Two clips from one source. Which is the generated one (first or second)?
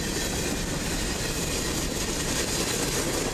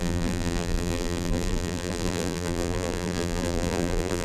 second